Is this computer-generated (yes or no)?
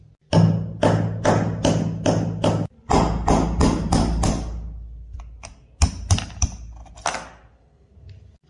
no